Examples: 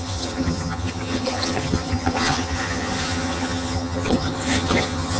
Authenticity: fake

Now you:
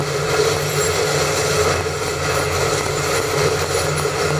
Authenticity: real